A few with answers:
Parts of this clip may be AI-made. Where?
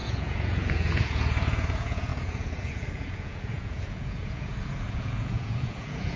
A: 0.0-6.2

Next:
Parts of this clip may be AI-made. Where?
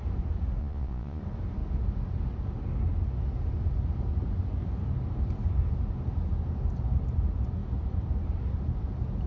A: 0.6-1.2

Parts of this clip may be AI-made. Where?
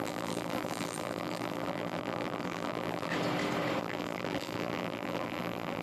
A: 0.0-3.1; 3.8-5.8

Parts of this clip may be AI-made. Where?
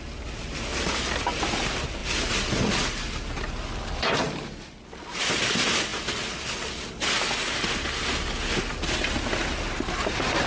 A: none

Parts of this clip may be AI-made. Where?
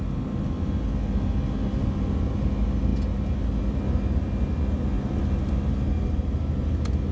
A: none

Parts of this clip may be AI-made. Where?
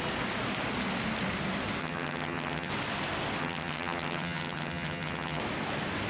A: 1.8-2.7; 3.4-5.4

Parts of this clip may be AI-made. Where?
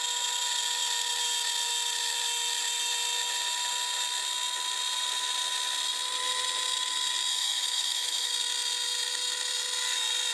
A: 7.3-8.3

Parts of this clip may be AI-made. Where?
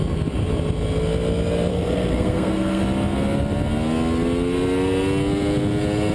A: 1.7-2.8